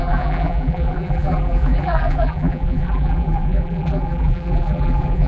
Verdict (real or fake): fake